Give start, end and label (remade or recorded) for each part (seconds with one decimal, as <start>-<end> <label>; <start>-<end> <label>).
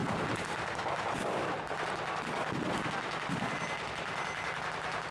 0.0-5.1 recorded